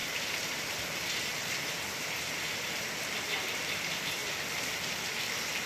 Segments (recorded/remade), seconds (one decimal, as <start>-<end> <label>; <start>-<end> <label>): 0.0-0.5 remade; 0.5-5.7 recorded